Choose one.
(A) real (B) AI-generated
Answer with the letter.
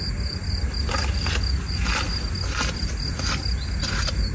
A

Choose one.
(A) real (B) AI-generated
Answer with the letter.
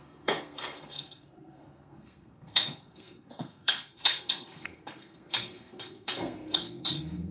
B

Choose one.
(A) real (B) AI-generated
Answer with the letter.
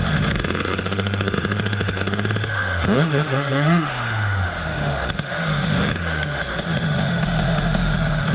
B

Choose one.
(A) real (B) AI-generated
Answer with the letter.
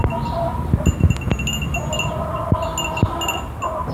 A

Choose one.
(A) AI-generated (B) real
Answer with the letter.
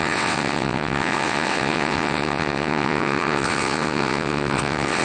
A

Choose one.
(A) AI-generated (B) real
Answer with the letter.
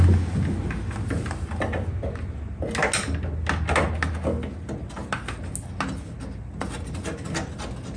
B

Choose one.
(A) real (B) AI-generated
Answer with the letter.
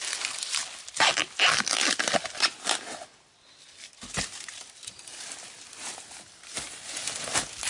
A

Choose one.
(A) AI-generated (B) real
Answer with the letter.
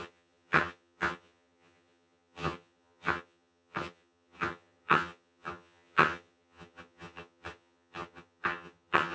A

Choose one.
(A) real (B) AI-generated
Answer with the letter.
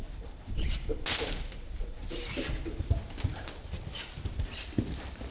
A